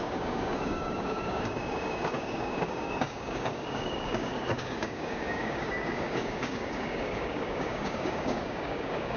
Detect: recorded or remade remade